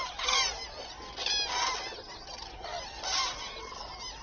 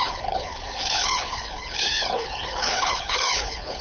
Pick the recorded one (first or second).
first